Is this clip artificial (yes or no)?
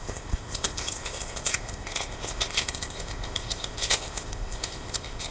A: yes